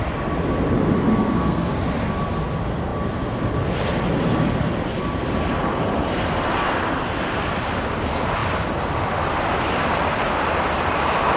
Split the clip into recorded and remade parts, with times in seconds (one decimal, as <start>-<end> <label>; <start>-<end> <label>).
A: 0.0-1.1 recorded; 1.1-1.8 remade; 1.8-11.4 recorded